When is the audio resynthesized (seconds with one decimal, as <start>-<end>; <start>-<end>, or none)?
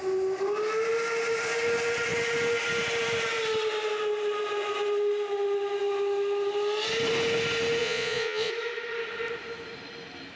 7.8-8.5